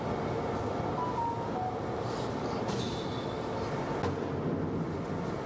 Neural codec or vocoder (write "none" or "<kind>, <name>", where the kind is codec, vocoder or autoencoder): none